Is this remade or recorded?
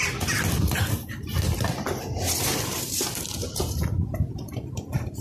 recorded